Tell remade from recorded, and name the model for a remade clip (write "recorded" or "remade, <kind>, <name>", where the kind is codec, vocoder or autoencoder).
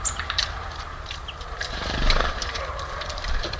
remade, vocoder, BigVGAN v2